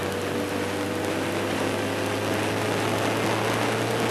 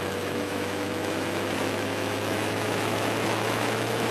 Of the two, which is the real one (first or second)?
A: first